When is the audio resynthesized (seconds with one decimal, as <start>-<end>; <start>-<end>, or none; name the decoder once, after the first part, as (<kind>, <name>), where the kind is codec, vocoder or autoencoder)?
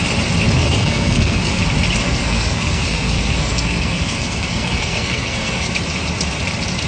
0.6-1.6 (codec, SNAC); 2.0-5.7